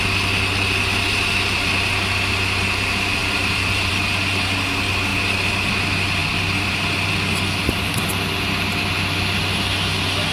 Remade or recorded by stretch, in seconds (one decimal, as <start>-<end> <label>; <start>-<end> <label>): 0.0-3.2 recorded; 3.2-3.9 remade; 3.9-10.3 recorded